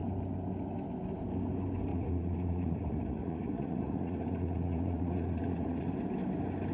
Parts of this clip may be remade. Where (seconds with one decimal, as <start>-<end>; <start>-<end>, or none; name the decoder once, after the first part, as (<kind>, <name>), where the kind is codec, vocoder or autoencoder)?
1.9-5.9 (vocoder, Vocos)